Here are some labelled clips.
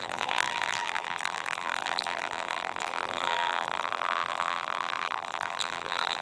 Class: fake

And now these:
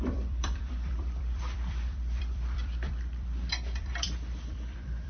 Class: fake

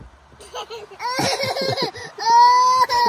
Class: real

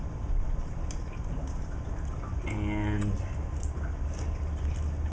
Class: real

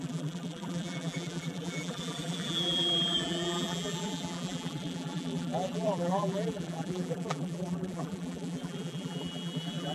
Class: fake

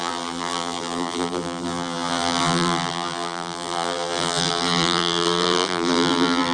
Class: fake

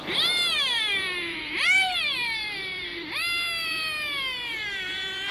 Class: fake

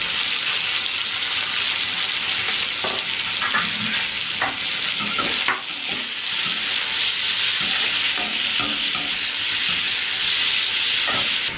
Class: real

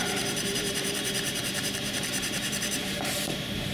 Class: fake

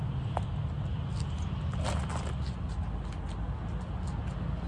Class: real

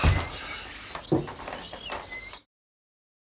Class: real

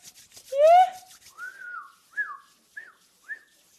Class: real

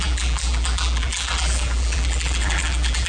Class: fake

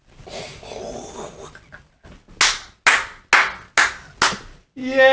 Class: real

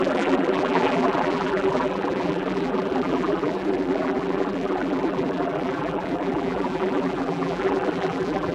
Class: fake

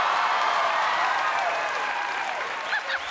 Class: fake